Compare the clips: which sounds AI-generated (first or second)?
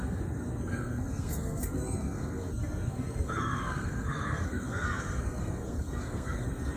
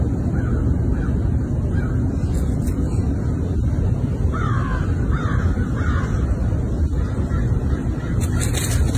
first